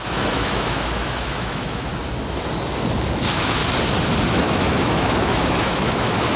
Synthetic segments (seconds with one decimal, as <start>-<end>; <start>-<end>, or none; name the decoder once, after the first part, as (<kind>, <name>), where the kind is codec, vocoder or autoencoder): 0.0-1.9 (autoencoder, DAC-VAE); 3.2-3.6; 4.3-6.4